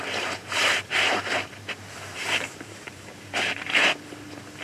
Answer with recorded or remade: remade